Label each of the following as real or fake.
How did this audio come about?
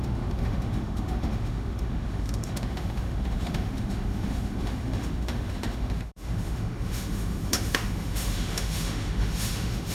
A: fake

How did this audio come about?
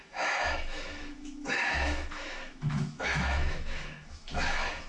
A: fake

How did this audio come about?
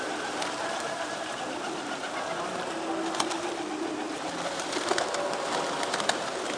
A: real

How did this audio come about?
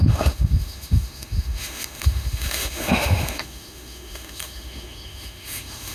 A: fake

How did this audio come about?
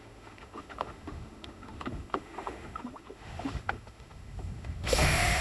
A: fake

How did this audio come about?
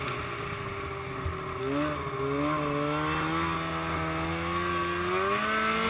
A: real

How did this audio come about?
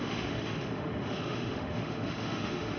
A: fake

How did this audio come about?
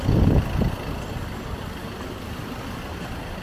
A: real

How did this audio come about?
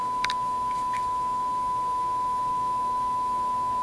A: fake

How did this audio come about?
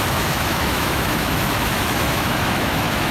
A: fake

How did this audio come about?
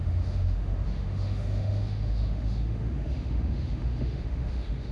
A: fake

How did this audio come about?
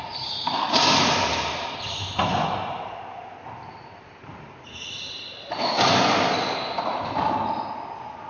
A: real